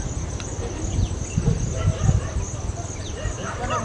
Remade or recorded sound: recorded